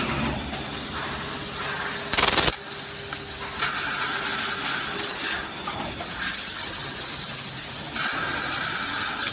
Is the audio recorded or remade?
recorded